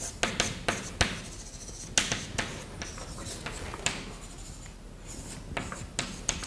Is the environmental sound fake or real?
real